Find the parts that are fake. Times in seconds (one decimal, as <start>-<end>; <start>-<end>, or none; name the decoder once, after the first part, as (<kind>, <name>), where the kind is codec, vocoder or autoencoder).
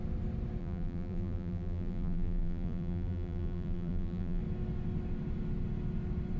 0.6-4.4 (vocoder, BigVGAN v2)